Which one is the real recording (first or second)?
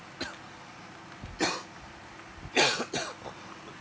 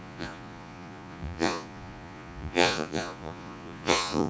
first